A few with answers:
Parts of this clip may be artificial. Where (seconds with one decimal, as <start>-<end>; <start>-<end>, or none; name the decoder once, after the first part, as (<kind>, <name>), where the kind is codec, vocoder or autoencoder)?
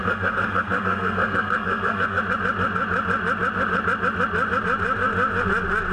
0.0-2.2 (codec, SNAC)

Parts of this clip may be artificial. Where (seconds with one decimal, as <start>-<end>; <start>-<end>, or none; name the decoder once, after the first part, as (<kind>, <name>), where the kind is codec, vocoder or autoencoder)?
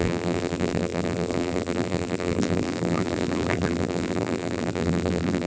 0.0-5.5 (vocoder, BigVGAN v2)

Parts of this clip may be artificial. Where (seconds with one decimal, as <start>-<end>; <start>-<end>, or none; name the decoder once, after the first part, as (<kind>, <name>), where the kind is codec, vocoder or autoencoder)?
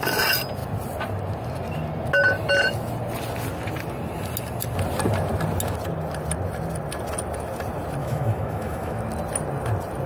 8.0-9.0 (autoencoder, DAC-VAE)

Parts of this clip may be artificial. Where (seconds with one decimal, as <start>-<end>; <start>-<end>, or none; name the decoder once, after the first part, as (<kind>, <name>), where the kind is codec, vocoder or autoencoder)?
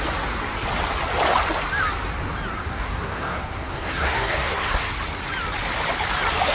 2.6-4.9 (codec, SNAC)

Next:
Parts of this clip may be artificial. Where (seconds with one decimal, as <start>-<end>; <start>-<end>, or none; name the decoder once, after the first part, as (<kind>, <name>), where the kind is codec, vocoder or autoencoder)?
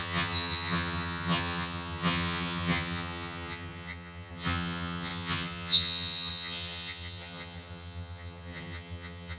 0.0-9.4 (vocoder, HiFi-GAN)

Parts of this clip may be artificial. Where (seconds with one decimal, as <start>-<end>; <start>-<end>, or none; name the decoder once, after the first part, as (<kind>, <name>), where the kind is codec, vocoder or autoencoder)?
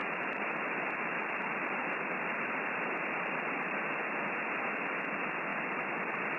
0.0-3.8 (vocoder, BigVGAN v2); 5.5-6.4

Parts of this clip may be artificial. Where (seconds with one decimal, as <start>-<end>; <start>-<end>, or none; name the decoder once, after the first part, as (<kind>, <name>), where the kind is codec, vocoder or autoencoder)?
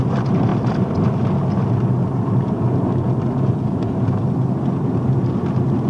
none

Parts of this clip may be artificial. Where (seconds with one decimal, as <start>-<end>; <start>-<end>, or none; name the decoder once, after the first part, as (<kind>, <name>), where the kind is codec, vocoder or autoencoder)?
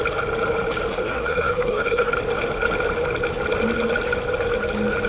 0.9-2.1 (codec, SNAC)